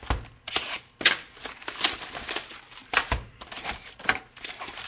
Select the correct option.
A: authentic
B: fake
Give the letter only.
A